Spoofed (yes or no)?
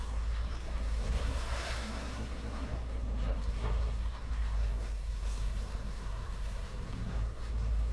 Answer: yes